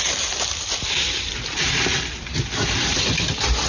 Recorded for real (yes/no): yes